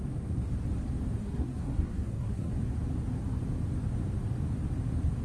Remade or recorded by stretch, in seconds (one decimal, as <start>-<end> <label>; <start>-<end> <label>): 0.0-1.2 recorded; 1.2-2.5 remade; 2.5-5.2 recorded